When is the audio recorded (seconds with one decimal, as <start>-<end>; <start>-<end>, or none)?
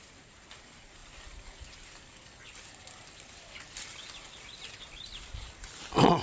0.0-6.2